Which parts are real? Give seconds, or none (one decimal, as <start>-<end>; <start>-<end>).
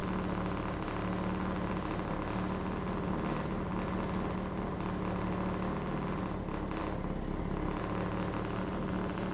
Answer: 0.0-9.3